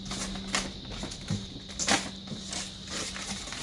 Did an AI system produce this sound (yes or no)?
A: no